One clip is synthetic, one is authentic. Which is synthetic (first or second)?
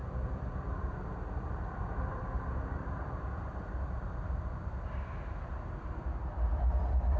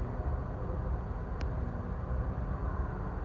first